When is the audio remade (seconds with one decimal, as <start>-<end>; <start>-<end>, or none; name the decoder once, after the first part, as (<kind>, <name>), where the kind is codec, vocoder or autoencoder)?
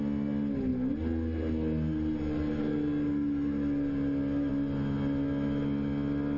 none